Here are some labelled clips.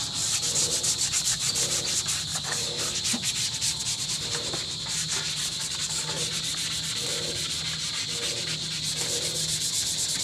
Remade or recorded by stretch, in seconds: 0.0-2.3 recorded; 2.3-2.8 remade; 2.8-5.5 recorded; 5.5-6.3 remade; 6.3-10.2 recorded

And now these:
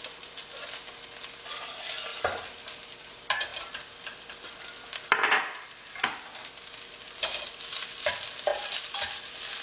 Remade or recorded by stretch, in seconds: 0.0-9.6 recorded

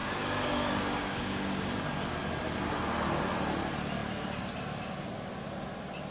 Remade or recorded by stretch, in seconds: 0.0-1.8 remade; 1.8-6.1 recorded

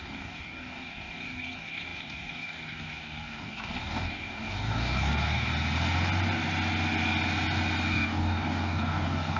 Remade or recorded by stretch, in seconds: 0.0-5.5 remade; 5.5-7.9 recorded; 7.9-9.4 remade

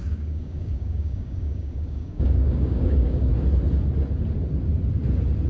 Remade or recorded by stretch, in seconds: 0.0-3.3 remade; 3.3-5.5 recorded

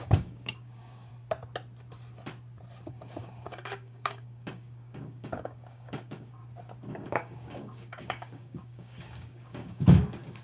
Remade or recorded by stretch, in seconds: 0.0-1.1 remade; 1.1-2.9 recorded; 2.9-6.4 remade; 6.4-6.9 recorded; 6.9-10.4 remade